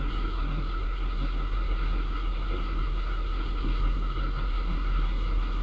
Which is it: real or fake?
fake